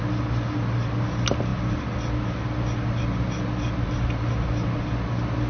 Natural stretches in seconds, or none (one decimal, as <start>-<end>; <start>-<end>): 0.0-5.5